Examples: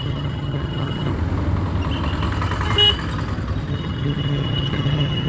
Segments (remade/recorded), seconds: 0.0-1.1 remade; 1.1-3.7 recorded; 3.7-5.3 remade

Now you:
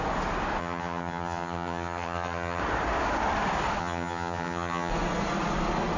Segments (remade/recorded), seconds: 0.0-0.6 recorded; 0.6-2.6 remade; 2.6-3.8 recorded; 3.8-4.9 remade; 4.9-6.0 recorded

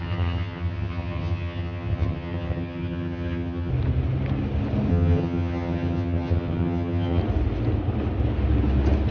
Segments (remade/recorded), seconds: 0.0-3.7 remade; 3.7-4.9 recorded; 4.9-7.2 remade; 7.2-9.1 recorded